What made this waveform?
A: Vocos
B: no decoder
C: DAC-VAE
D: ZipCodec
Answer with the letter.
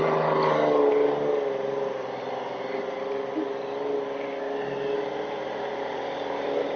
B